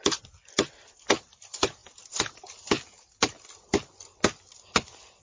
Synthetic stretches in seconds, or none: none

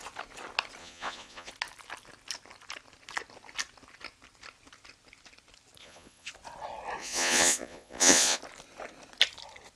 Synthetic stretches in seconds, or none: 0.8-1.5 (vocoder, Vocos); 5.8-6.3; 7.0-8.4

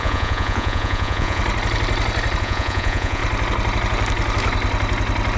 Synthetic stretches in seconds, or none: 0.0-1.4 (vocoder, Vocos); 2.4-3.2

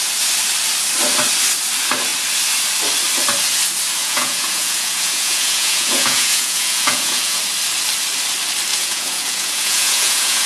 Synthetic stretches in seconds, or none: 4.0-7.4 (vocoder, Vocos); 8.7-10.5

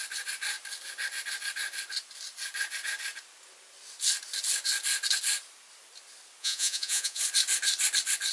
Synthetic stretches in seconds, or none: 6.4-7.2 (vocoder, Vocos)

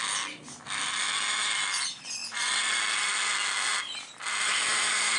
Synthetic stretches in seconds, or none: none